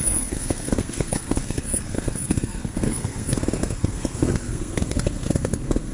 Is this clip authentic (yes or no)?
no